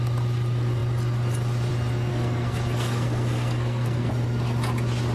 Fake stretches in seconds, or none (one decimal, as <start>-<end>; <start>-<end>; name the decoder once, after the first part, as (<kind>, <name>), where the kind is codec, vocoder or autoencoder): 2.1-4.1 (codec, SNAC)